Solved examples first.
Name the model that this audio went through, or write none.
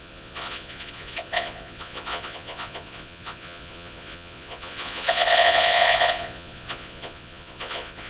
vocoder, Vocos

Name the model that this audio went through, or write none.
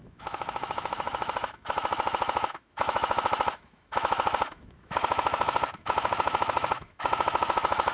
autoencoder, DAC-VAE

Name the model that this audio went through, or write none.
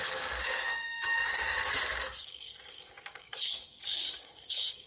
codec, DAC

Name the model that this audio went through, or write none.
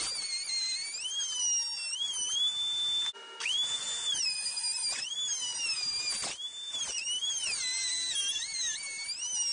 none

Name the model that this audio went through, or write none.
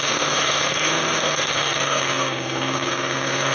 codec, SNAC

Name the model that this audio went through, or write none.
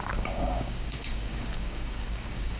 codec, DAC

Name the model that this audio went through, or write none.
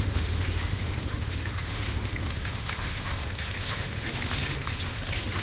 autoencoder, DAC-VAE